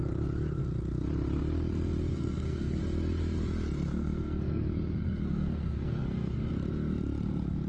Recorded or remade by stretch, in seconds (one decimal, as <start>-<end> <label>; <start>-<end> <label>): 0.0-2.1 recorded; 2.1-2.8 remade; 2.8-3.9 recorded; 3.9-6.5 remade; 6.5-7.7 recorded